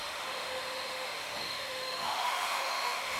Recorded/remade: remade